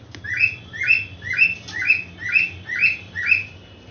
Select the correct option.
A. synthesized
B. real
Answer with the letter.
B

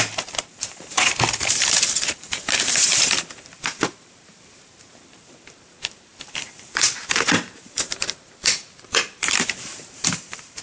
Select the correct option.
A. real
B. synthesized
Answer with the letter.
B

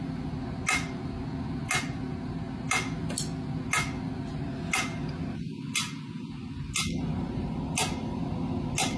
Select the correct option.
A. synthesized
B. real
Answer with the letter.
B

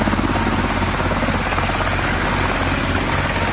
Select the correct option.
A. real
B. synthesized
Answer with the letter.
A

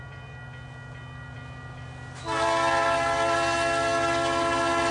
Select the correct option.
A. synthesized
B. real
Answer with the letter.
B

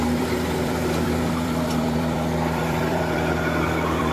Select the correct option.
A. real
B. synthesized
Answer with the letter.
B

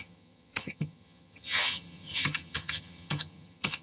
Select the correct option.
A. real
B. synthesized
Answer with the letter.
B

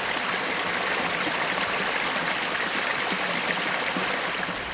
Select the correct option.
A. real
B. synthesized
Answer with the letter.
A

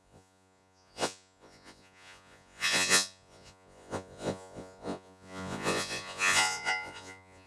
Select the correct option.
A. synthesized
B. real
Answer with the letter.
A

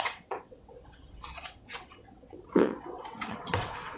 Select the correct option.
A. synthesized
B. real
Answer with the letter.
A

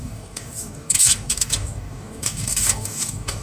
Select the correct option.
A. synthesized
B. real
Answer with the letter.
A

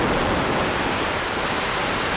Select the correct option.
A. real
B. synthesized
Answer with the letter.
A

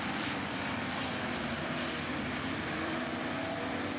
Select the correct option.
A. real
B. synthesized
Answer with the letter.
B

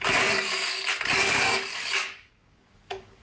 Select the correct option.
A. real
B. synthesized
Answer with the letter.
B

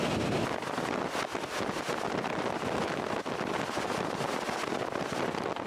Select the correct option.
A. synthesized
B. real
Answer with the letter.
B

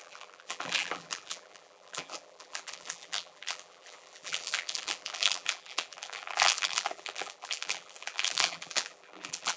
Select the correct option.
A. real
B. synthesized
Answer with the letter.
B